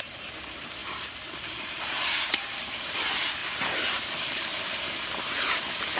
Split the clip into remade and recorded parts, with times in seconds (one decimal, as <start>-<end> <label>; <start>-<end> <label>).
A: 0.0-6.0 remade